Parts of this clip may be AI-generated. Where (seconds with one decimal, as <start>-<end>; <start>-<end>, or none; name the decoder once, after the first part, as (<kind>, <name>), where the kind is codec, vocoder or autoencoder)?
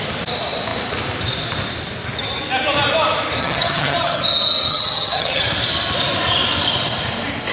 3.4-4.2 (vocoder, HiFi-GAN); 4.7-5.4